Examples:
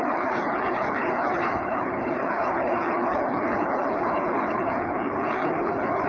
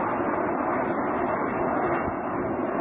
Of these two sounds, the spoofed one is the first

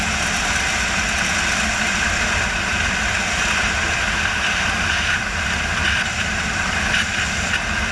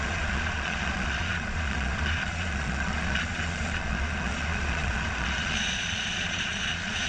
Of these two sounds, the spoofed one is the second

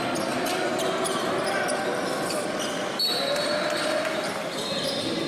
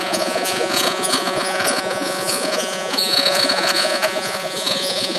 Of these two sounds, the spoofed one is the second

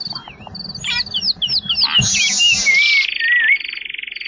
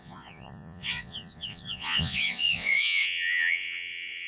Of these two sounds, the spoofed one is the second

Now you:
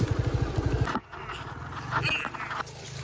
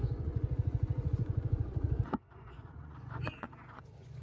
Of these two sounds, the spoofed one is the second